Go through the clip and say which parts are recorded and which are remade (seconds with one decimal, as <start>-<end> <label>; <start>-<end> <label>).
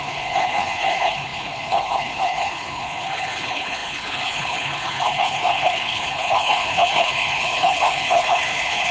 0.0-8.9 remade